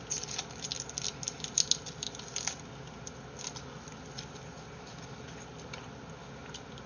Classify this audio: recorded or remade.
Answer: recorded